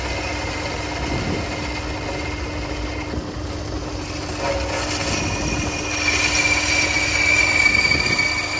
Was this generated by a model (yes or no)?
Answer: no